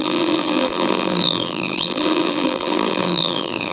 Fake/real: fake